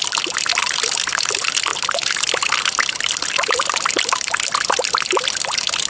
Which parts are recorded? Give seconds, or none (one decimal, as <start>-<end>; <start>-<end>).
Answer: 0.0-5.9